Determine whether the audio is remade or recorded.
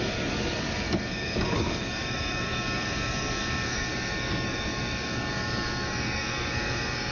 remade